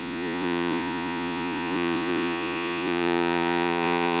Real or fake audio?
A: fake